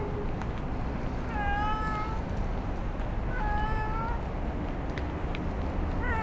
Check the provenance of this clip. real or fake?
real